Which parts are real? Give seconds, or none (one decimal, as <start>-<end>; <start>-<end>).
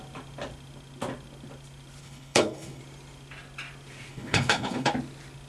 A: 0.0-2.0; 2.8-4.1; 4.9-5.5